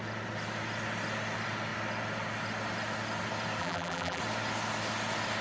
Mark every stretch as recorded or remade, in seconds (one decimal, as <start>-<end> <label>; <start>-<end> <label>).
0.0-3.6 recorded; 3.6-4.2 remade; 4.2-5.4 recorded